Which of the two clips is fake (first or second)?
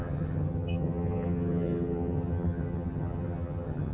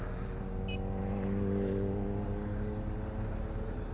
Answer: first